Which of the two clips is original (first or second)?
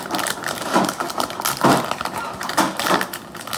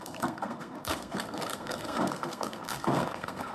first